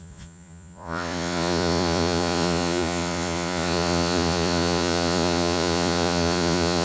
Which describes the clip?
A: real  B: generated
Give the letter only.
B